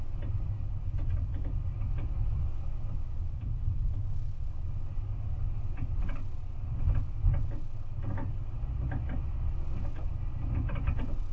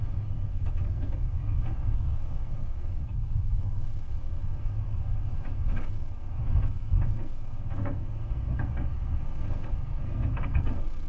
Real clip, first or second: first